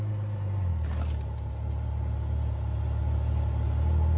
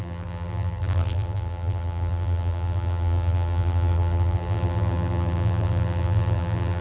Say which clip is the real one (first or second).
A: first